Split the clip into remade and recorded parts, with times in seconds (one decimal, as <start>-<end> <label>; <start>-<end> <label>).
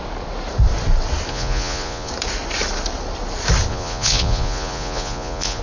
0.0-1.3 recorded; 1.3-2.1 remade; 2.1-3.7 recorded; 3.7-5.6 remade